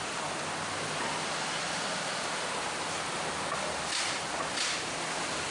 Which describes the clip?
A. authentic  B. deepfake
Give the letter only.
A